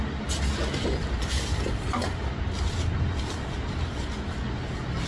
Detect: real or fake real